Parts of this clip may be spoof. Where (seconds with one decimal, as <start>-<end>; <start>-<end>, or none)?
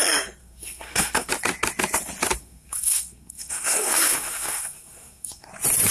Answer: 0.4-1.3; 2.4-5.5